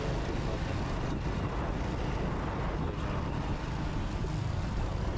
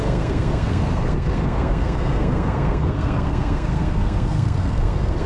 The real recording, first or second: first